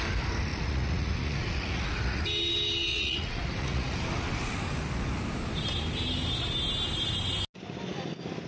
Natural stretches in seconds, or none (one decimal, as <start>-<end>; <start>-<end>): 0.0-0.5; 2.2-2.9; 4.0-8.5